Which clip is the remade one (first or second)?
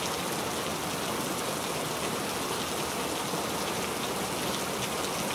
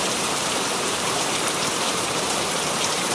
second